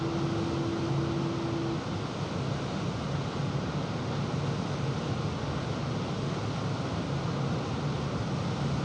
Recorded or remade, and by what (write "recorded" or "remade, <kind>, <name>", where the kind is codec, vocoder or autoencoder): recorded